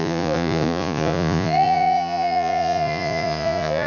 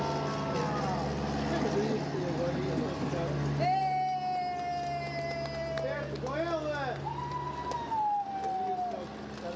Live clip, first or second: second